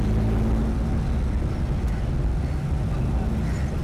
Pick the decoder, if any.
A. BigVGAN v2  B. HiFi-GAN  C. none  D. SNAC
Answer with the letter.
C